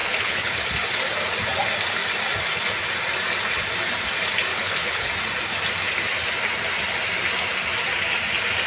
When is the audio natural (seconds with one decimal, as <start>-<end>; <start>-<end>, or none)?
0.6-4.5; 5.1-8.7